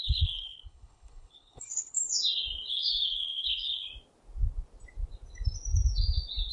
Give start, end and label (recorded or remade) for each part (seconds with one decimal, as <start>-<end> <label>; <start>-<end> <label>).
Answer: 0.0-2.0 remade; 2.0-2.7 recorded; 2.7-3.9 remade; 3.9-6.5 recorded